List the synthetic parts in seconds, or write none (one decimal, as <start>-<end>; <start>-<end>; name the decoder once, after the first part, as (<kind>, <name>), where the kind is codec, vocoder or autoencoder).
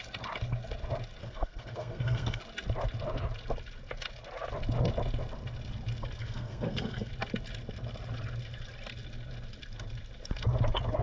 1.2-2.4 (codec, SNAC); 6.2-7.1